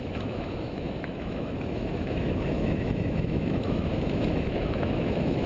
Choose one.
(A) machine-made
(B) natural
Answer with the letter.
A